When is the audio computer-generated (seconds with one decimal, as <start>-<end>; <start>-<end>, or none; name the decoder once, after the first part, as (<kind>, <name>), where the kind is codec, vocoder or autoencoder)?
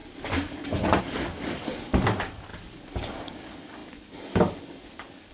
0.0-5.3 (codec, DAC)